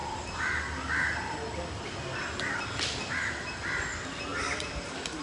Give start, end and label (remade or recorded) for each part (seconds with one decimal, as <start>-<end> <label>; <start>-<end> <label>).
0.0-5.2 recorded